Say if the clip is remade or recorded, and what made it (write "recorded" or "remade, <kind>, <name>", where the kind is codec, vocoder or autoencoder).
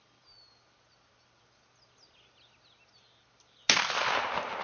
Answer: recorded